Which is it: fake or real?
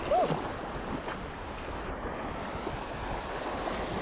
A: real